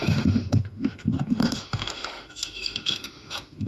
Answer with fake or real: fake